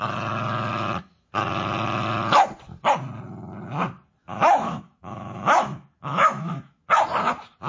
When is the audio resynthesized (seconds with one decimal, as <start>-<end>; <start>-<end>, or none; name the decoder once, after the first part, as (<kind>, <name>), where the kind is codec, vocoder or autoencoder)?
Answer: 4.2-6.8 (autoencoder, DAC-VAE)

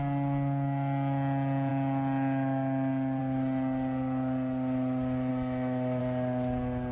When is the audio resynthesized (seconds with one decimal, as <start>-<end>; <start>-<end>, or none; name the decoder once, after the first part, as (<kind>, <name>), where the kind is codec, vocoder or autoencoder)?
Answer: 5.3-6.0 (autoencoder, DAC-VAE)

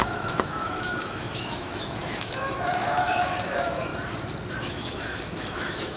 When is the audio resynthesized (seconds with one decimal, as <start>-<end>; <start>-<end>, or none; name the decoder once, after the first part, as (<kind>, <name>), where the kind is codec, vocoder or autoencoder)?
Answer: 0.0-3.9 (autoencoder, DAC-VAE); 4.5-6.0

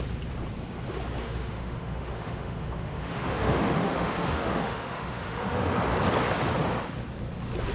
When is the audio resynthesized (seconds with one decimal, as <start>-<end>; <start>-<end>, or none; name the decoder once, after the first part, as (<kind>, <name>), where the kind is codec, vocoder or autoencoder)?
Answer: 1.2-5.8 (autoencoder, DAC-VAE)

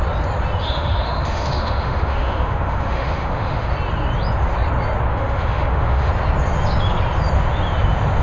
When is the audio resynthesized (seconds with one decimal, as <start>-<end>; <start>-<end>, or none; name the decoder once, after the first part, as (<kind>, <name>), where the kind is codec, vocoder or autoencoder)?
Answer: 0.6-3.7 (autoencoder, DAC-VAE); 5.1-6.1